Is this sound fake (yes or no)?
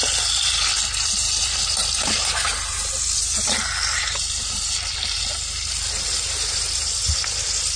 no